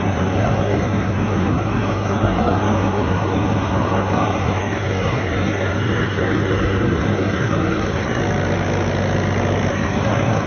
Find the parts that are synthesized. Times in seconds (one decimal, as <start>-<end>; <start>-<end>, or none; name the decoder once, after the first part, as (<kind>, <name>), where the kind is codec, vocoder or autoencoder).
0.0-8.2 (codec, SNAC); 9.7-10.5